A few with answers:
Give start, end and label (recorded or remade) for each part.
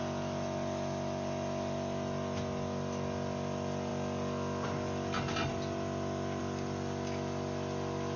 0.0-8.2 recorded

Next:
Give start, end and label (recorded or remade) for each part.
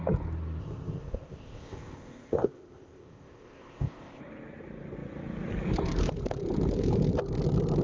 0.0-0.6 recorded; 0.6-4.2 remade; 4.2-7.8 recorded